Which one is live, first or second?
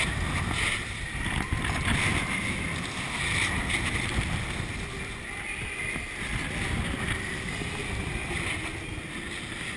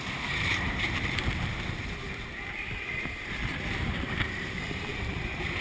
first